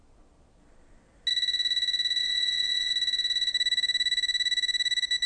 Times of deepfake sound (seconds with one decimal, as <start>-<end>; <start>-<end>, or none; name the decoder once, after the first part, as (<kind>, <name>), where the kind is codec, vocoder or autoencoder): 2.2-2.9 (vocoder, Vocos)